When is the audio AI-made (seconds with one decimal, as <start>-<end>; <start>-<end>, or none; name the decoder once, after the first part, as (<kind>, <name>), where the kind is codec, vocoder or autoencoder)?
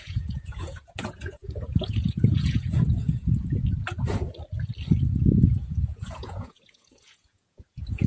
0.0-3.8 (vocoder, Vocos); 5.2-8.1